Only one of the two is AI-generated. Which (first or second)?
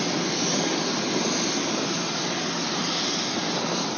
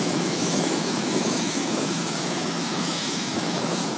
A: second